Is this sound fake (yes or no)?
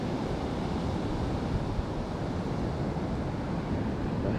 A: no